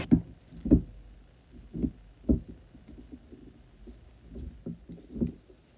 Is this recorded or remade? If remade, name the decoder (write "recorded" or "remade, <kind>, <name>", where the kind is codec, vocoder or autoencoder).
recorded